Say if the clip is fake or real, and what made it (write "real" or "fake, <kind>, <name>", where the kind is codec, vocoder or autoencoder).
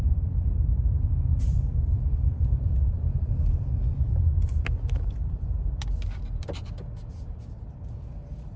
fake, vocoder, BigVGAN v2